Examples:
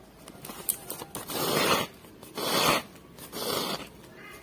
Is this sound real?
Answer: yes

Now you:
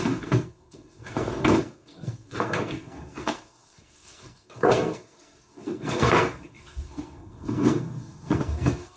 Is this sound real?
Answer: no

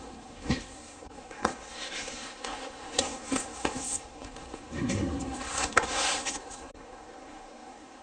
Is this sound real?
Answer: no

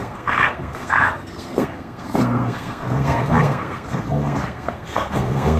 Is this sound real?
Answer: no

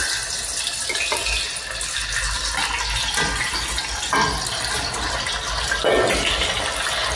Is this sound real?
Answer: yes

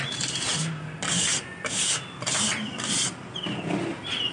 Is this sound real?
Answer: yes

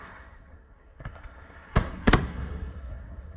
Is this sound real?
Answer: no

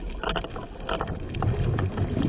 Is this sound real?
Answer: yes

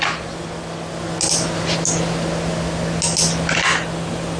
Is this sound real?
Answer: yes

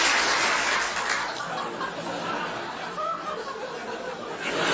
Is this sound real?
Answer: yes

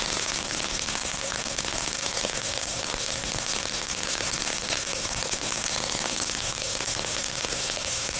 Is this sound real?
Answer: no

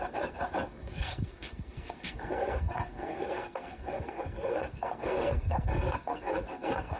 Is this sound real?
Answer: no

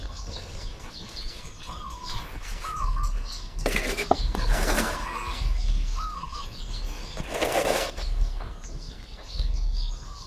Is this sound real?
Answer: no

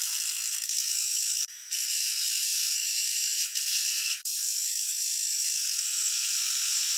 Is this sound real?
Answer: no